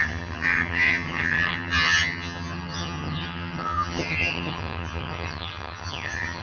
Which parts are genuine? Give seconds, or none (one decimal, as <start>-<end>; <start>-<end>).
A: none